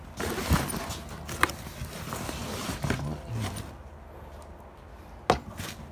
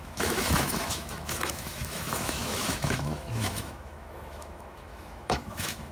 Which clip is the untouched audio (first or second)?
first